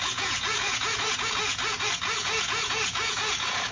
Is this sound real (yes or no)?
no